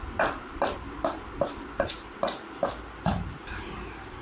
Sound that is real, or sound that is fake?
real